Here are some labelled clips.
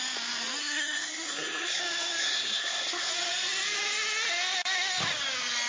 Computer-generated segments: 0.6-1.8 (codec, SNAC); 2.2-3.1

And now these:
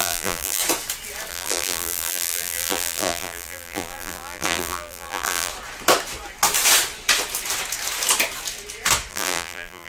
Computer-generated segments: 0.0-0.6 (vocoder, BigVGAN v2); 1.3-5.5; 9.1-9.9

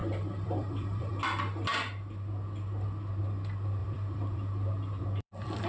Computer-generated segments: 0.0-1.1 (vocoder, BigVGAN v2); 3.8-5.7

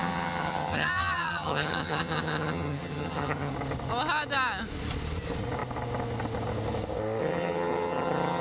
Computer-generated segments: 0.0-3.5 (vocoder, HiFi-GAN); 7.2-8.4

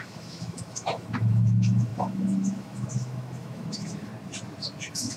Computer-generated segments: 0.0-4.1 (autoencoder, DAC-VAE); 4.8-5.2

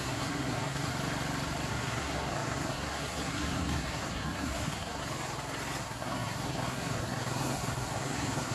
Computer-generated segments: 0.0-0.9 (codec, SNAC); 1.7-5.0; 5.8-8.5